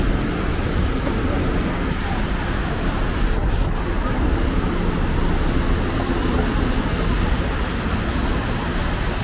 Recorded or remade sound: recorded